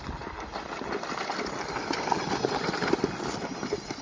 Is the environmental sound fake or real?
real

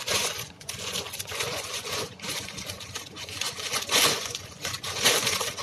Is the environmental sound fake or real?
fake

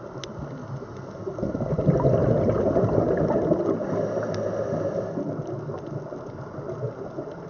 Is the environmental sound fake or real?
real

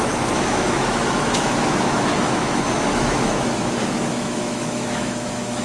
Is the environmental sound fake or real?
fake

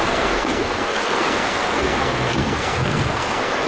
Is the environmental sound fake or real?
fake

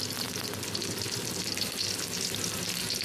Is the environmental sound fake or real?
real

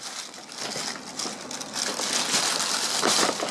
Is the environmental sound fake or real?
real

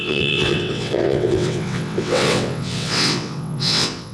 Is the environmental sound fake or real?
fake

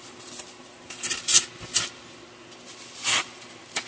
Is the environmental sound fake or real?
real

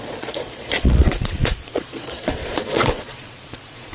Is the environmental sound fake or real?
fake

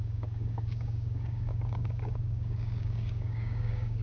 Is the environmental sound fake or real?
fake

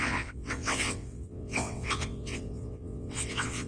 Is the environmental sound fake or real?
fake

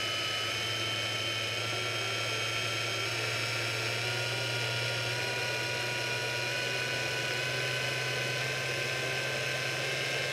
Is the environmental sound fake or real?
real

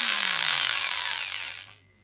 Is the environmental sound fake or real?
fake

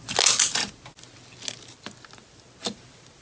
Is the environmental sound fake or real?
real